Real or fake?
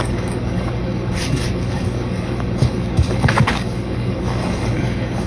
fake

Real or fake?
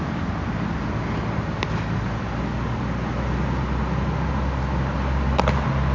real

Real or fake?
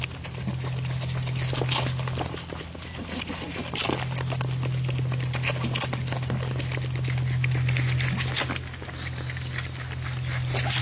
real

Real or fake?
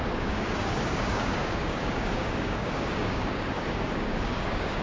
fake